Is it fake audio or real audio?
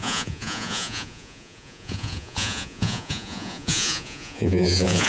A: fake